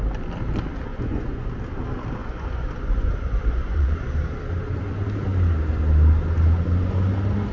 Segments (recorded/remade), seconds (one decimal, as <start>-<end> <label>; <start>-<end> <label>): 0.0-0.9 recorded; 0.9-1.5 remade; 1.5-2.2 recorded; 2.2-4.0 remade; 4.0-7.5 recorded